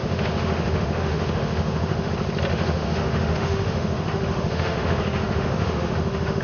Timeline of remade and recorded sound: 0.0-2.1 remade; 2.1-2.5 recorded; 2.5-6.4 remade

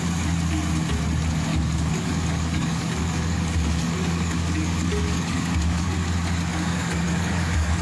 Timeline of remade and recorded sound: 0.0-1.5 recorded; 1.5-5.9 remade; 5.9-6.5 recorded; 6.5-7.8 remade